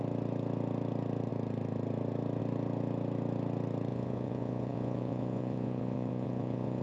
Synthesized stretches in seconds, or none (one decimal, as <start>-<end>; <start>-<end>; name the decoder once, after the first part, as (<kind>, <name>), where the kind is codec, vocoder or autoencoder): 3.9-6.8 (vocoder, Vocos)